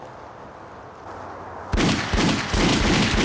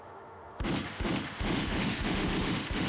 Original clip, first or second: first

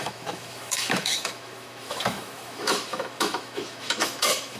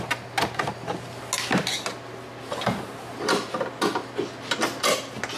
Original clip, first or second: second